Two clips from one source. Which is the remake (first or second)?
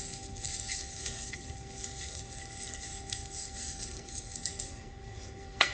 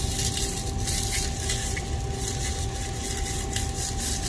first